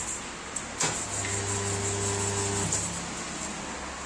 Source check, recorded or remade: recorded